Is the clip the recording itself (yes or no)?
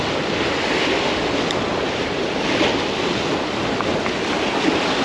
yes